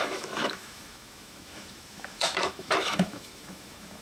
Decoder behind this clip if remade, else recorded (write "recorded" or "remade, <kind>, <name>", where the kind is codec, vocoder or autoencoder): remade, autoencoder, DAC-VAE